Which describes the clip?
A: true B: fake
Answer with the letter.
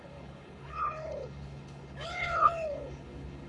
B